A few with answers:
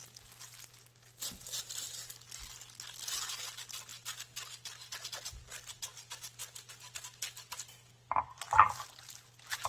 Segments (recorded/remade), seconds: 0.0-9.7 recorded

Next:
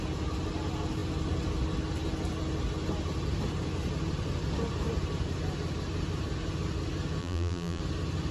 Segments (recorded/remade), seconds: 0.0-7.2 recorded; 7.2-7.8 remade; 7.8-8.3 recorded

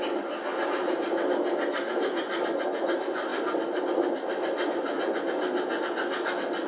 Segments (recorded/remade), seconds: 0.0-6.7 recorded

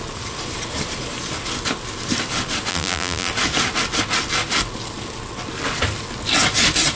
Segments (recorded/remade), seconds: 0.0-2.7 recorded; 2.7-3.3 remade; 3.3-7.0 recorded

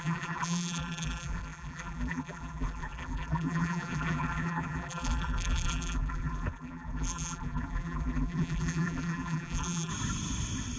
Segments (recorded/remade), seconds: 0.0-9.9 remade; 9.9-10.8 recorded